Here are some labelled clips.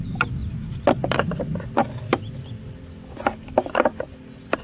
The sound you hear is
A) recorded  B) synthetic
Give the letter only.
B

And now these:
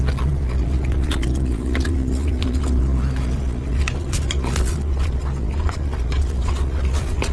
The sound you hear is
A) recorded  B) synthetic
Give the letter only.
B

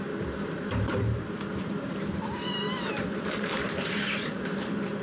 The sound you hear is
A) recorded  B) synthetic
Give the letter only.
B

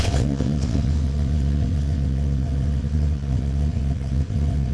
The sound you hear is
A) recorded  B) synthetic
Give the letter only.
B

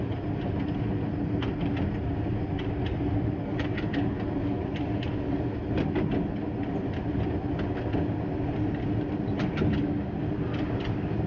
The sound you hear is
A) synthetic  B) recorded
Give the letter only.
B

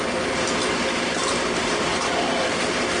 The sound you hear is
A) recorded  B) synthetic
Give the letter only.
A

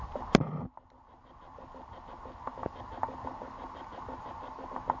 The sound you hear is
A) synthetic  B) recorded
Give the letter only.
B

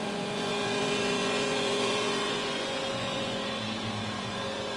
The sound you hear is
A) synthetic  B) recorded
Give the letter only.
A